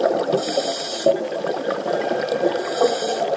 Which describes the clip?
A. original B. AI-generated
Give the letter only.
A